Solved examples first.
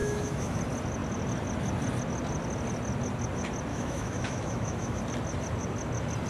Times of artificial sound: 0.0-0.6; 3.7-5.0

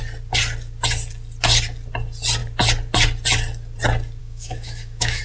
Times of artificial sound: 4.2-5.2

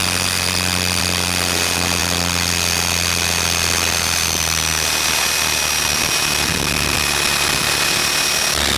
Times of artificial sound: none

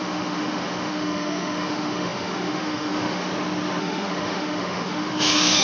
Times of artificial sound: 0.0-3.3; 3.8-5.6